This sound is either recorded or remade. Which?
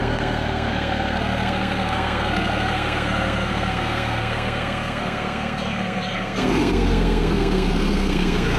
remade